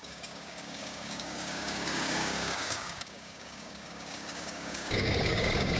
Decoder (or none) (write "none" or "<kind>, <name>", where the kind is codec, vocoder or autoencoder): codec, DAC